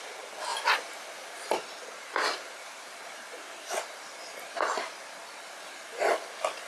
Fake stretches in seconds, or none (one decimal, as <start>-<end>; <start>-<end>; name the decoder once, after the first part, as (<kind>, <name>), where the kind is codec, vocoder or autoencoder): none